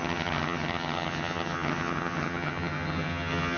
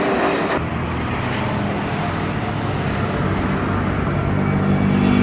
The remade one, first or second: first